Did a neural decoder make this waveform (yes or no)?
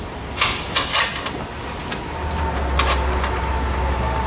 no